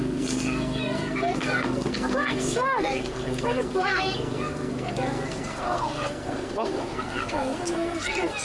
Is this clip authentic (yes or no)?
no